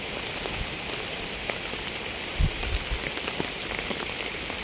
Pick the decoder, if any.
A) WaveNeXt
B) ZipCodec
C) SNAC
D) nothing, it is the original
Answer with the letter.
D